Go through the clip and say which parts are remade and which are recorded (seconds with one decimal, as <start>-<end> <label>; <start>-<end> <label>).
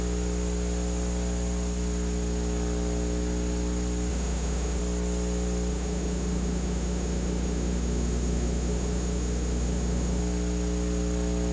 0.0-4.1 recorded; 4.1-4.8 remade; 4.8-5.7 recorded; 5.7-10.2 remade; 10.2-11.5 recorded